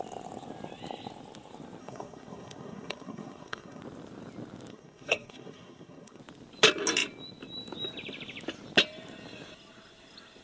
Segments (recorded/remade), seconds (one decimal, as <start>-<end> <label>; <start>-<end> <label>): 0.0-1.8 recorded; 1.8-3.8 remade; 3.8-4.7 recorded; 4.7-6.2 remade; 6.2-10.4 recorded